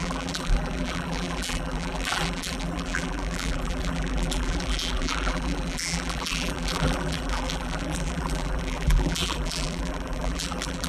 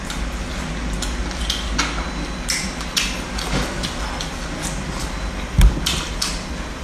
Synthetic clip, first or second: first